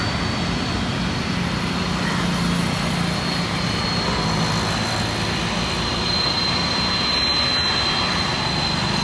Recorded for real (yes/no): yes